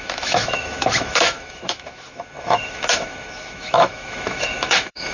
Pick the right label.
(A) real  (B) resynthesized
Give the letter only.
B